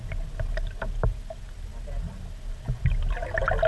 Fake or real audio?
real